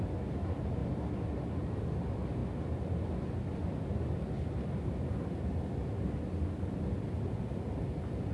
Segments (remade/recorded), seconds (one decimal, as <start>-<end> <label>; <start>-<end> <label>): 0.0-8.3 recorded